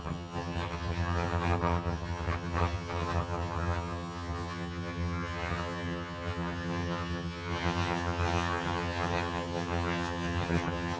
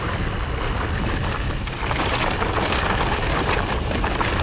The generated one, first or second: first